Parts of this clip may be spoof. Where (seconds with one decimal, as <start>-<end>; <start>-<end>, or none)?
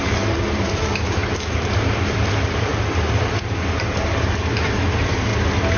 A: 0.0-1.2; 1.7-2.7; 3.2-5.3